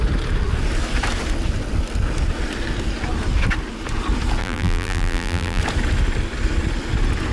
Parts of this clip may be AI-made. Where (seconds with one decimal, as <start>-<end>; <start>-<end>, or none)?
4.4-5.6